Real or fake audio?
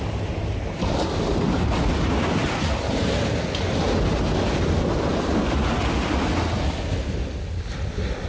real